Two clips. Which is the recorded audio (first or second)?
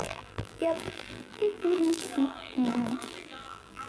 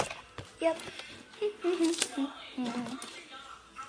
second